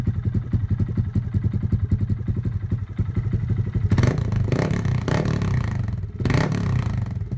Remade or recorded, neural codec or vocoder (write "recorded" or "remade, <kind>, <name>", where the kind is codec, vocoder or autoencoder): recorded